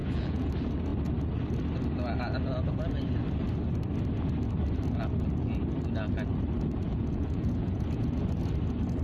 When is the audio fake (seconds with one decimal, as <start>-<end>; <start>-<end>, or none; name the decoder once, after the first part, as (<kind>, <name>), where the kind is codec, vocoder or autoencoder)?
0.0-0.5 (vocoder, Vocos); 6.9-8.2